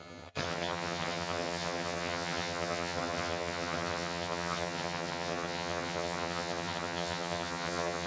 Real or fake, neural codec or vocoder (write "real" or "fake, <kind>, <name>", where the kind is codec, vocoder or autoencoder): fake, vocoder, HiFi-GAN